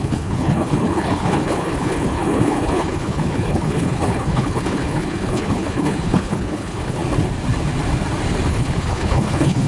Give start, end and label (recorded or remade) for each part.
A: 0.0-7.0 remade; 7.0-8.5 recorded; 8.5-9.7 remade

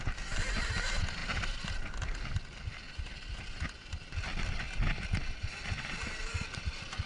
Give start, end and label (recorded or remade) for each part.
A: 0.0-7.1 recorded

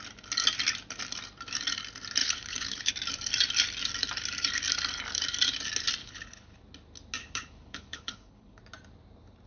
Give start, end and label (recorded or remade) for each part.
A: 0.0-2.2 recorded; 2.2-2.9 remade; 2.9-6.0 recorded; 6.0-6.6 remade; 6.6-7.2 recorded; 7.2-8.6 remade; 8.6-9.5 recorded